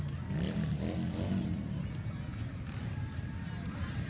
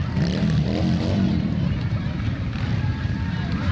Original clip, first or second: first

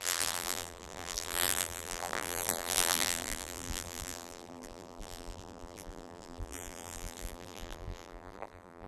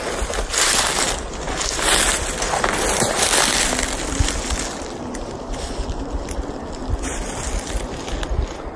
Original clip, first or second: second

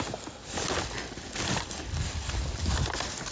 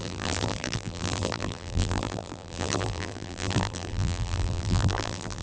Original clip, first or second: first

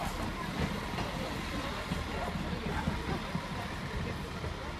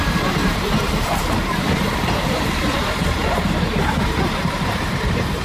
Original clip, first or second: first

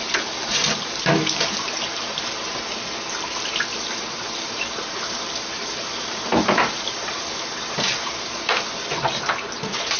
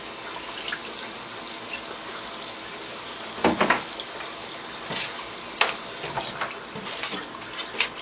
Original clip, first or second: second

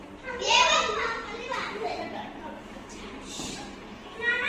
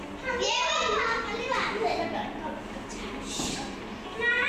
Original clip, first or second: second